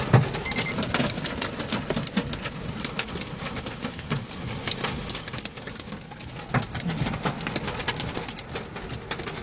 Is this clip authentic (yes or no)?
yes